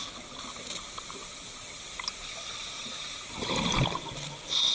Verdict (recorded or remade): recorded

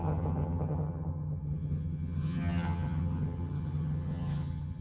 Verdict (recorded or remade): remade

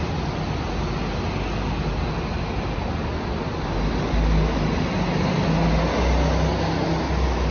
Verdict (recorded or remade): recorded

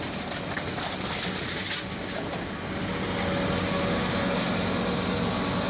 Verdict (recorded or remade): recorded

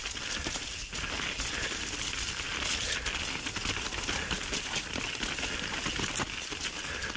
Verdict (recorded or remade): recorded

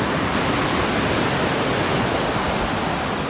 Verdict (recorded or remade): recorded